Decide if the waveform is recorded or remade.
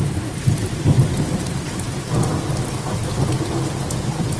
recorded